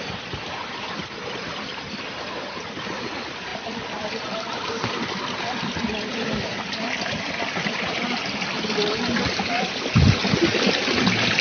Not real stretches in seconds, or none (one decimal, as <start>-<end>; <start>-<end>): none